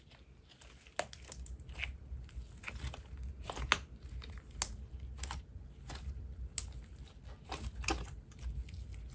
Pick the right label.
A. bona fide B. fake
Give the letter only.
A